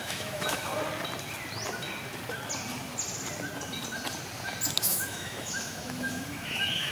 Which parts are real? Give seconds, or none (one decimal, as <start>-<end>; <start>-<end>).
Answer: 0.7-4.8